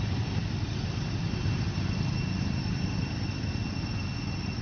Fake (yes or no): no